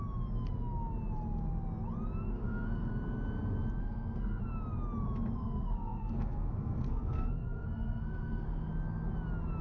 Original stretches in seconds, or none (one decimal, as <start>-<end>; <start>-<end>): 0.0-2.3; 2.9-3.8; 4.4-5.4; 8.7-9.6